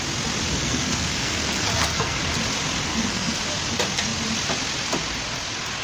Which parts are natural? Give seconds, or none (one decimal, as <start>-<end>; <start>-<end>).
0.0-0.6; 2.2-2.9; 3.4-5.8